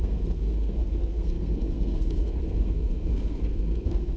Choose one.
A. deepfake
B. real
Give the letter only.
A